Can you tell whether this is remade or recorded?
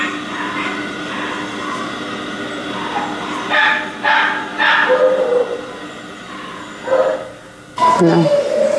recorded